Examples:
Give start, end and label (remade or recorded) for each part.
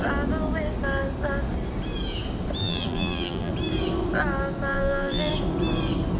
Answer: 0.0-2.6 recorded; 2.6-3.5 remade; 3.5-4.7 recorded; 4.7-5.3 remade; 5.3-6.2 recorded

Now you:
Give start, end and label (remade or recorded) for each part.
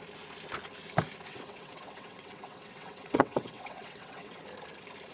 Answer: 0.0-1.3 recorded; 1.3-4.4 remade; 4.4-5.1 recorded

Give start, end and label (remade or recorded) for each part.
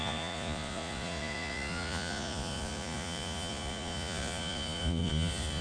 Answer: 0.0-5.6 remade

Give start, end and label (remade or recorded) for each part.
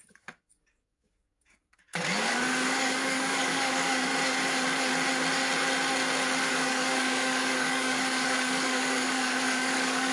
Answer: 0.0-4.1 remade; 4.1-6.5 recorded; 6.5-10.1 remade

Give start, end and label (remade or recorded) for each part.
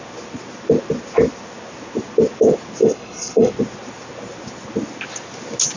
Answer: 0.0-2.8 recorded; 2.8-3.5 remade; 3.5-5.8 recorded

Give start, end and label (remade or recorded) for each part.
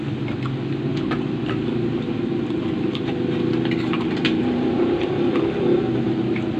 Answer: 0.0-6.6 recorded